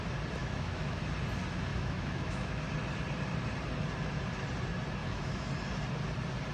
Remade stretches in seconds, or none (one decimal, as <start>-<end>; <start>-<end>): 0.4-1.0; 1.7-2.6; 5.0-5.5